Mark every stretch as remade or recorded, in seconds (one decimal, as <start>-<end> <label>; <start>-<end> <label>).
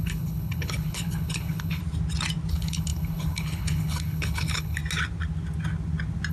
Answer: 0.0-1.8 remade; 1.8-2.5 recorded; 2.5-4.8 remade; 4.8-6.3 recorded